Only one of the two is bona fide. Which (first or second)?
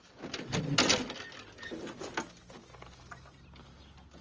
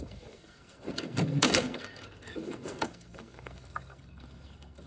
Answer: first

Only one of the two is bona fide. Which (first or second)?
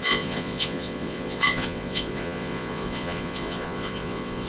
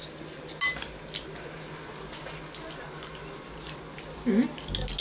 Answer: second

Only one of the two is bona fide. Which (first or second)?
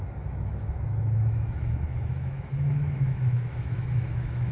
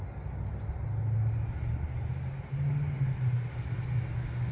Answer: second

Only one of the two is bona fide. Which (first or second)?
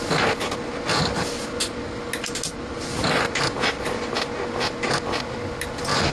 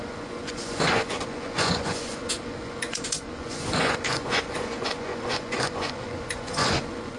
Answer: first